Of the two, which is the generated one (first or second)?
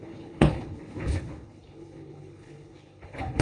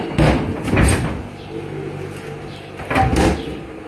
first